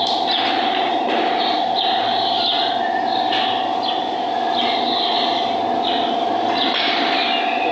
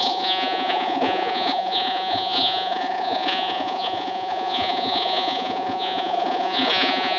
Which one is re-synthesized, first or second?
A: second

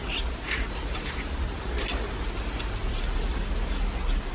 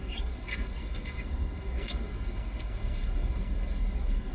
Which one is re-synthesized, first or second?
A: second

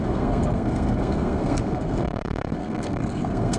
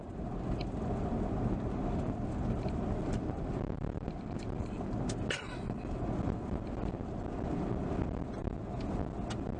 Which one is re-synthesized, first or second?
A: first